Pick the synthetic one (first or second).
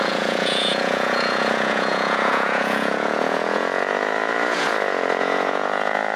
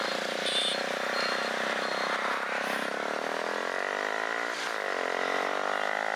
first